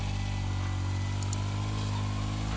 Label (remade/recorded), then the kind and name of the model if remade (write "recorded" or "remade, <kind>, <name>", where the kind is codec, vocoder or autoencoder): recorded